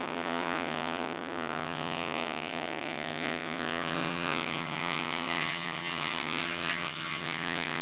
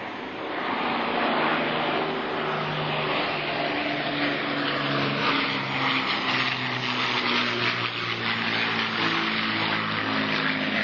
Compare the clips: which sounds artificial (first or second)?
first